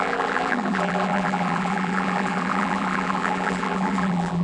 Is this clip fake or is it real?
fake